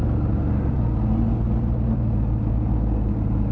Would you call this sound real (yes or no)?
yes